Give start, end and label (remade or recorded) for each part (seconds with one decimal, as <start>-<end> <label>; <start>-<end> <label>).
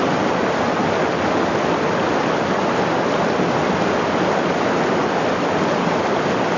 0.0-6.6 recorded